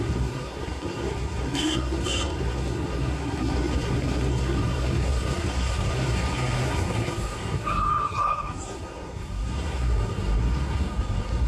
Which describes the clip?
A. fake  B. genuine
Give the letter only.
A